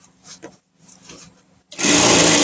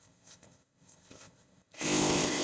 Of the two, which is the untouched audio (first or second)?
first